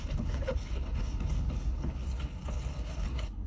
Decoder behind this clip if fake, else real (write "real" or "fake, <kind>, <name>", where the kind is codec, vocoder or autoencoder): fake, codec, HILCodec